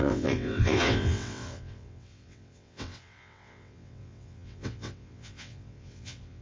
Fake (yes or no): yes